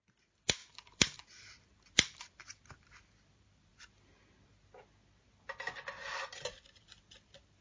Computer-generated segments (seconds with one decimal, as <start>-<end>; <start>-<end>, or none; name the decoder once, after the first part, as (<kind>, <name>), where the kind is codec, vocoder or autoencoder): 0.0-3.7 (vocoder, BigVGAN v2); 6.2-7.6